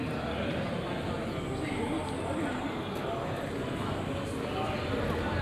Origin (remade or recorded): recorded